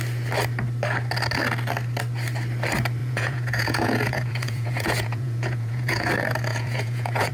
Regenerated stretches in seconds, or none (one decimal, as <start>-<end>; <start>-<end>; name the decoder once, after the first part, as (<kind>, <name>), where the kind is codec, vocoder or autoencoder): 3.0-6.1 (vocoder, Vocos); 6.5-7.3